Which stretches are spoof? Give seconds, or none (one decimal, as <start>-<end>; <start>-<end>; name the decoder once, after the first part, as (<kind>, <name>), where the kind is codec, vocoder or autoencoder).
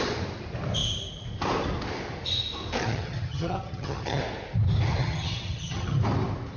2.8-4.2 (vocoder, HiFi-GAN); 5.0-6.0